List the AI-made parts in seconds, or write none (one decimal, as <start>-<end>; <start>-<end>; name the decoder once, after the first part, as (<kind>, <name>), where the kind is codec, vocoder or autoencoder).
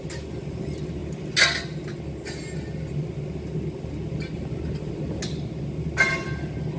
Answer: none